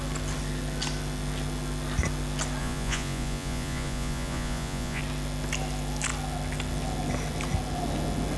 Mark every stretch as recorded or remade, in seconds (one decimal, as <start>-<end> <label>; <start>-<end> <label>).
0.0-2.6 recorded; 2.6-5.0 remade; 5.0-8.4 recorded